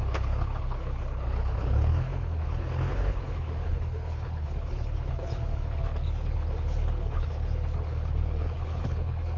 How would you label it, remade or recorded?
remade